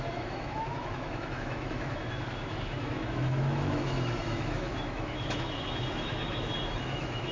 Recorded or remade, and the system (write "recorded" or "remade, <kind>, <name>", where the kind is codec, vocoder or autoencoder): remade, autoencoder, DAC-VAE